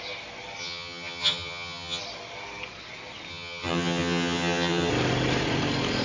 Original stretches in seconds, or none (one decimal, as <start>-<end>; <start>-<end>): 0.0-0.6; 2.0-3.3; 4.9-6.0